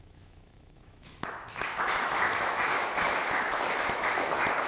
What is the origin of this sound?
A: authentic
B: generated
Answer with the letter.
B